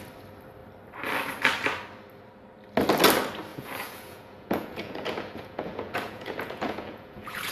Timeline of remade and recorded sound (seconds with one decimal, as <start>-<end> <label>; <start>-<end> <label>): 0.0-3.5 recorded; 3.5-7.5 remade